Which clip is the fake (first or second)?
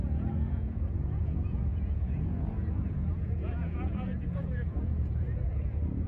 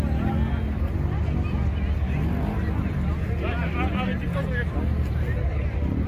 first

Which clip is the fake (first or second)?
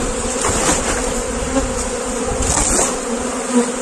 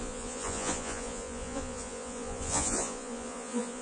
second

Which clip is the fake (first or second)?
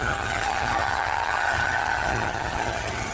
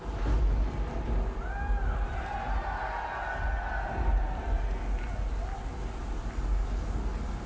first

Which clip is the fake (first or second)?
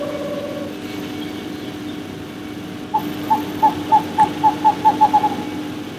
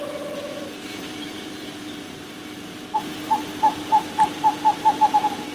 second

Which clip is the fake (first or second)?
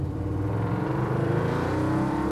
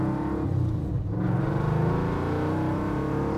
first